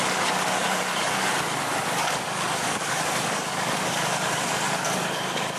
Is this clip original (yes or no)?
no